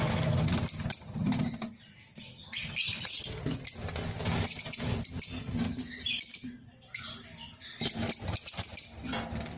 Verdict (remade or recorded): recorded